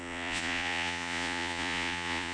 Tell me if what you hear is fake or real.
fake